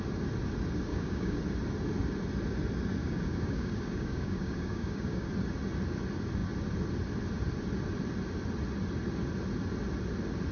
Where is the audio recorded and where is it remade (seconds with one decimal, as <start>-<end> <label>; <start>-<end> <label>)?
0.0-0.9 recorded; 0.9-1.4 remade; 1.4-3.0 recorded; 3.0-5.3 remade; 5.3-10.5 recorded